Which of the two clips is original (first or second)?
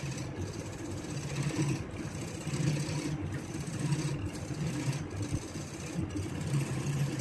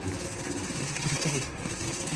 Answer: first